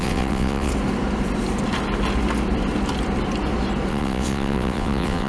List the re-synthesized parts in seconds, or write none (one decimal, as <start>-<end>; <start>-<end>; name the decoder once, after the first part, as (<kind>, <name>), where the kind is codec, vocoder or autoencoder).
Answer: 0.0-0.7 (vocoder, WaveNeXt); 3.9-5.3